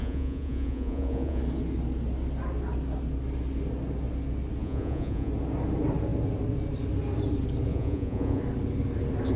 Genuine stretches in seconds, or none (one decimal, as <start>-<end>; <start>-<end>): 1.4-4.6; 5.3-7.7; 8.4-9.4